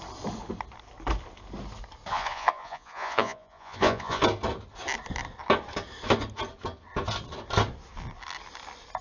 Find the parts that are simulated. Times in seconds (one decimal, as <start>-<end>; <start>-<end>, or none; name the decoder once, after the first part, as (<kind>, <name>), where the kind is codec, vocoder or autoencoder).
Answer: 2.1-4.2 (vocoder, Vocos)